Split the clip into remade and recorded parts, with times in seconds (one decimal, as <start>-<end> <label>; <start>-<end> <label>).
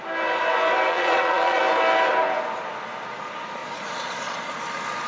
0.0-0.9 recorded; 0.9-1.6 remade; 1.6-3.6 recorded; 3.6-4.5 remade; 4.5-5.1 recorded